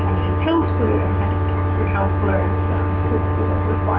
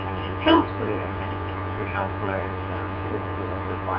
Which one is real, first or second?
first